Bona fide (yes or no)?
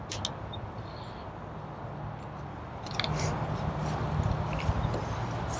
yes